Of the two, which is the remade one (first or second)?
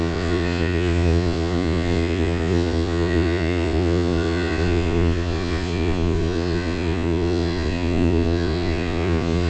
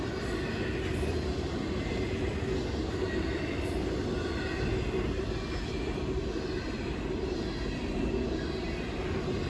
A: first